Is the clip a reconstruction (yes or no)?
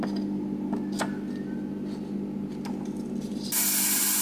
no